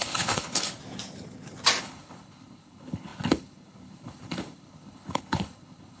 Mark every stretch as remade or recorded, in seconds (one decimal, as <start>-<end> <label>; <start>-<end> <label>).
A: 0.0-0.8 remade; 0.8-1.8 recorded; 1.8-6.0 remade